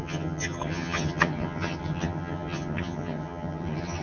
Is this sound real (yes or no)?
no